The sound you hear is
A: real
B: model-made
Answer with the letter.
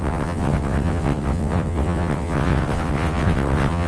B